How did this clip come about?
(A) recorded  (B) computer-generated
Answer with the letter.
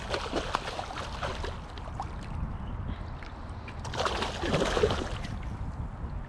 A